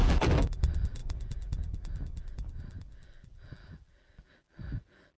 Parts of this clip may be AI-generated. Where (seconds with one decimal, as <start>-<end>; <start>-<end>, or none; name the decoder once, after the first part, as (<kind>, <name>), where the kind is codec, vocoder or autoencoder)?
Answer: 0.0-5.2 (vocoder, BigVGAN v2)